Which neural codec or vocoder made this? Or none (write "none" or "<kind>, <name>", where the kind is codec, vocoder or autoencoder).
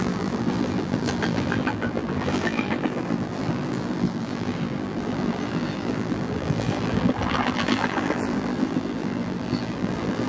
vocoder, BigVGAN v2